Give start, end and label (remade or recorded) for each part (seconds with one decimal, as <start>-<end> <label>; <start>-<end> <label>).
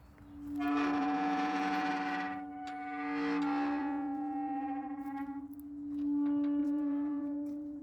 0.0-1.0 recorded; 1.0-1.9 remade; 1.9-3.8 recorded; 3.8-5.4 remade; 5.4-6.6 recorded; 6.6-7.8 remade